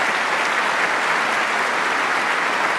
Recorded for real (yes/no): yes